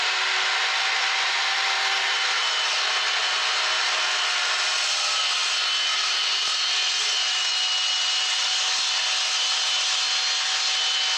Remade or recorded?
recorded